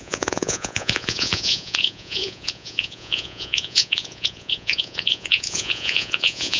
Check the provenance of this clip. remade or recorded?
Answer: remade